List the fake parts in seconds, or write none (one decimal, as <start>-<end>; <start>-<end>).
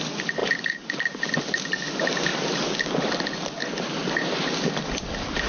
0.4-1.6